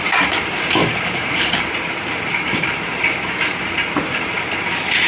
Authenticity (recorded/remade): remade